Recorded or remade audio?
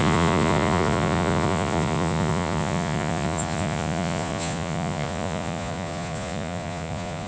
remade